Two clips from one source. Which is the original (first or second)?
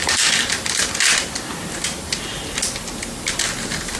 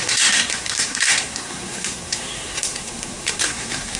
first